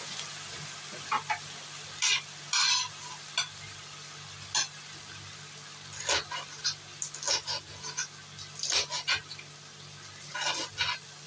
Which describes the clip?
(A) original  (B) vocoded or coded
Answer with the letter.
A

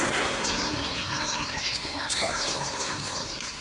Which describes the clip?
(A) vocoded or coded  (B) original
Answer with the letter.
A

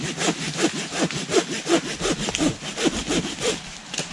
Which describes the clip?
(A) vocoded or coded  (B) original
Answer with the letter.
B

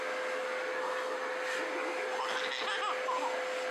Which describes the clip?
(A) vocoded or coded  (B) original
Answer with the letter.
B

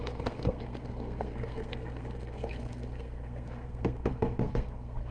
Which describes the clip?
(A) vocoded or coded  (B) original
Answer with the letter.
A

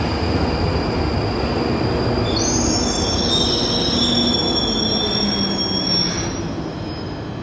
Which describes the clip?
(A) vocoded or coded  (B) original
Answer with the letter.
B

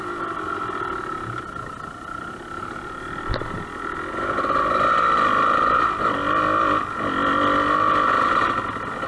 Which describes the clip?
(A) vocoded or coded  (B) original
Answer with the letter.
B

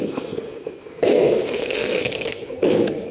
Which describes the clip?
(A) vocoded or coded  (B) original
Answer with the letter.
A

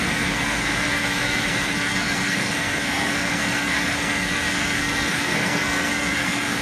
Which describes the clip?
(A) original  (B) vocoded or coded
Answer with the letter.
B